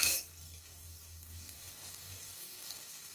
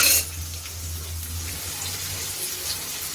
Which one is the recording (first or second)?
second